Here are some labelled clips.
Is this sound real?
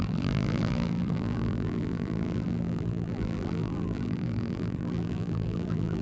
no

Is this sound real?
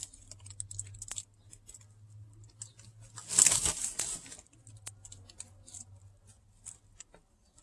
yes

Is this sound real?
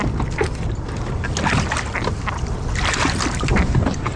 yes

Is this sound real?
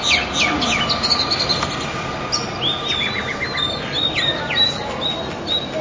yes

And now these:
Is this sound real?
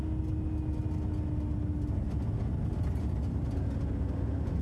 yes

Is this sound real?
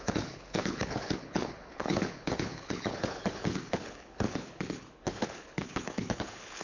no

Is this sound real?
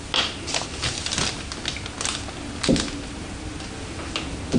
yes